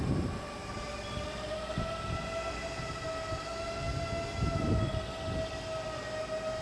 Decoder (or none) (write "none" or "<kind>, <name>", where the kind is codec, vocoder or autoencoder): none